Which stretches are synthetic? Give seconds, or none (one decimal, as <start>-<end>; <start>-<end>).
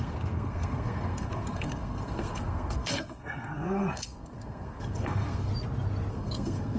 0.0-5.5; 6.1-6.8